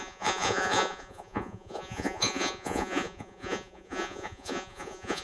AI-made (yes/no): yes